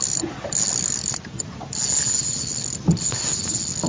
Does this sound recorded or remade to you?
recorded